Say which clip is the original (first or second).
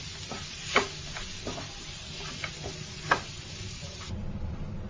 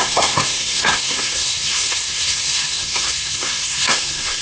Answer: first